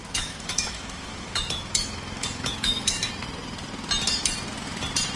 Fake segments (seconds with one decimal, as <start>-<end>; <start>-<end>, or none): 0.0-3.1